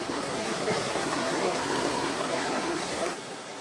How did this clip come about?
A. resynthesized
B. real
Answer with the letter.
A